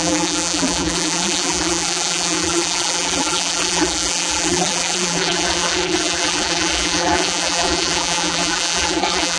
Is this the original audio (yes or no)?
no